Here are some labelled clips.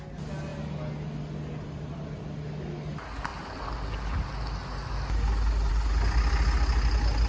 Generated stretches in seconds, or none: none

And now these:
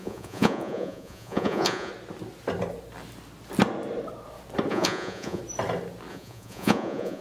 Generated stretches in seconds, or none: 0.0-1.9 (vocoder, Vocos); 4.7-5.4; 6.1-7.2